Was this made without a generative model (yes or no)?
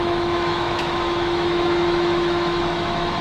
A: no